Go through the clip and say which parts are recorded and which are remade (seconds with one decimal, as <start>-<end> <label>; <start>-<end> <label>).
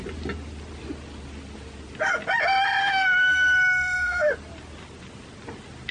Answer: 0.0-2.8 recorded; 2.8-4.3 remade; 4.3-5.9 recorded